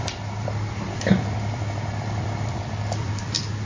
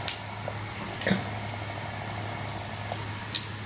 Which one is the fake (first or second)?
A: first